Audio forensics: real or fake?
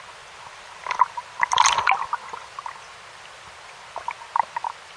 real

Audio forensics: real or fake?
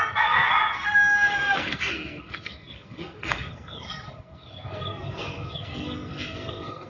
fake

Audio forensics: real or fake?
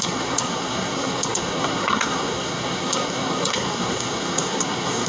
fake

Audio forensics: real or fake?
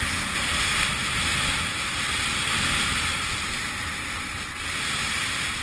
real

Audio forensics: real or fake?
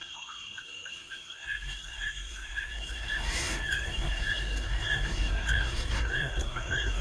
fake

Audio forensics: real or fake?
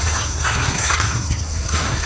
fake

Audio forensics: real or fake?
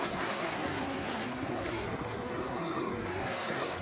fake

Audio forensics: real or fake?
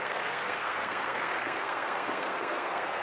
fake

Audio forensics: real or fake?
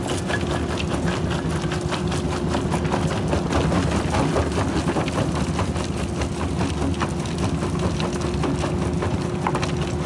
real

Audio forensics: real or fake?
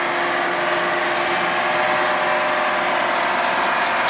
real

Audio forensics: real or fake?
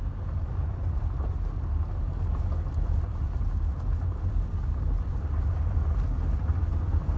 real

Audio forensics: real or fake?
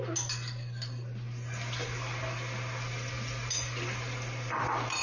real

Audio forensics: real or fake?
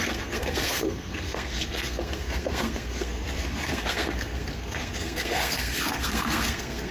fake